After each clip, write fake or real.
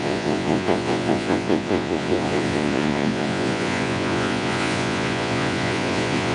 fake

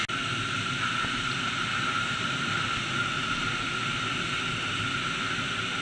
real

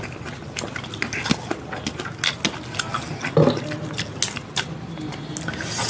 real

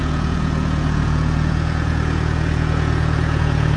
fake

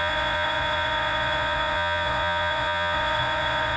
fake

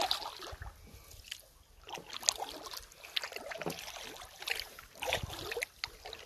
real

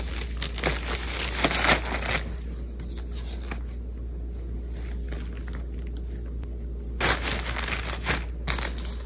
real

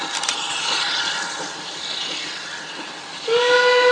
real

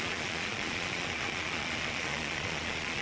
fake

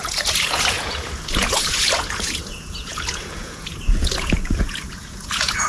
fake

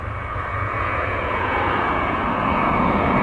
fake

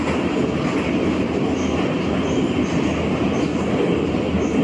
real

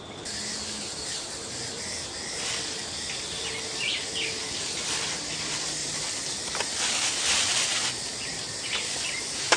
real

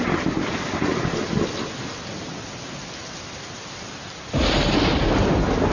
real